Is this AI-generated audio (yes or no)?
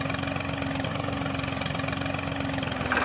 no